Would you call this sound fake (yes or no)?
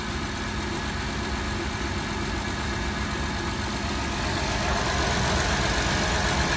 no